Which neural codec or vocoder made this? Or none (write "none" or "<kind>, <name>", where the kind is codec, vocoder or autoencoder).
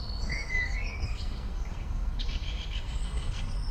codec, SNAC